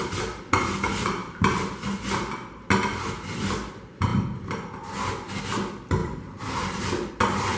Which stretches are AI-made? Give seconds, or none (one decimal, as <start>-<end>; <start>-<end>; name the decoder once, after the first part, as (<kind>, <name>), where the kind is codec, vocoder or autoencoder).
1.2-2.0 (vocoder, BigVGAN v2); 6.0-7.1